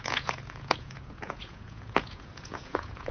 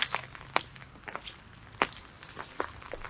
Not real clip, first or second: first